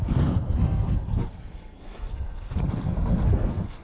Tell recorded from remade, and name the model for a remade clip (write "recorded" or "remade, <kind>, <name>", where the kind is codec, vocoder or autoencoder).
remade, codec, SNAC